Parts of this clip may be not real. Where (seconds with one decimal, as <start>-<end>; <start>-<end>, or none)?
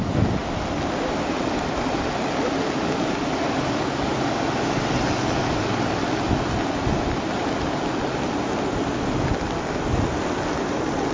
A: none